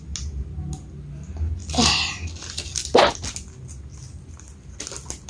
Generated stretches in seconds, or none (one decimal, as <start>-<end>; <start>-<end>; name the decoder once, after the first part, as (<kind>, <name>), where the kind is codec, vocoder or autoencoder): none

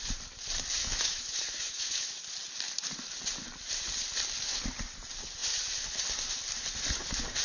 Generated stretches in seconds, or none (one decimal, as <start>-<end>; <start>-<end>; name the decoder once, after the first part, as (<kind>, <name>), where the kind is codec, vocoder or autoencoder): 0.8-2.2 (autoencoder, DAC-VAE)

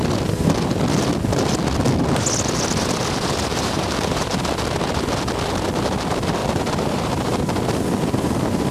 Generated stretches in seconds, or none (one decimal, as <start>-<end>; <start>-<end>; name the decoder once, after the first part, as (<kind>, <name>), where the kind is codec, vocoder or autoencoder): 3.5-4.5 (vocoder, BigVGAN v2); 6.4-7.6

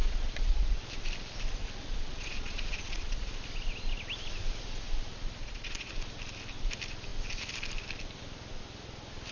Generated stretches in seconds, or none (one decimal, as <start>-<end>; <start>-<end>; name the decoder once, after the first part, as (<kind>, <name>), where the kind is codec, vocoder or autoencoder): 0.0-0.8 (vocoder, Vocos); 1.6-3.3; 5.4-5.9